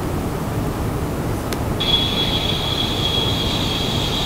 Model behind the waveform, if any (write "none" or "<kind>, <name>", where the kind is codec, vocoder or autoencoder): none